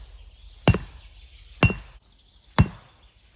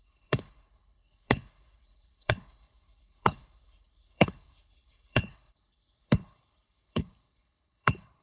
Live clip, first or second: first